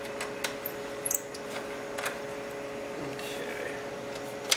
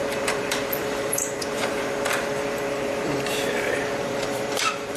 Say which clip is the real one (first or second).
first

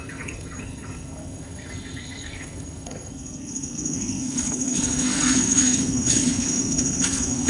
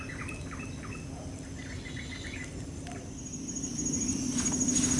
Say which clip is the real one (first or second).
second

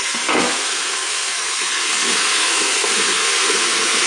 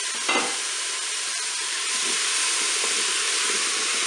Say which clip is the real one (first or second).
second